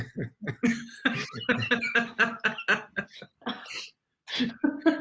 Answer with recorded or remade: recorded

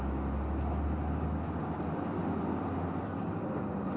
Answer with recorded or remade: recorded